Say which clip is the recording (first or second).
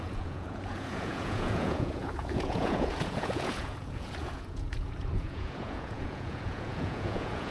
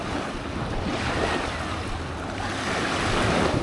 second